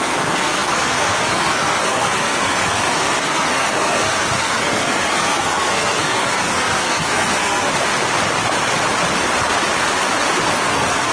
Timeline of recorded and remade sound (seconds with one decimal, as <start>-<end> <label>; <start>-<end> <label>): 0.0-7.7 remade; 7.7-10.5 recorded; 10.5-11.1 remade